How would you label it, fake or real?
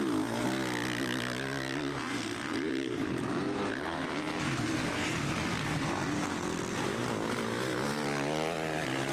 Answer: real